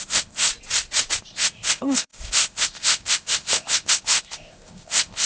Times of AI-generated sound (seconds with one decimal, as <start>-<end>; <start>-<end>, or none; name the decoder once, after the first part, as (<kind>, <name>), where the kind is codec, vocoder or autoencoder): 0.0-0.5 (codec, ZipCodec); 1.2-5.3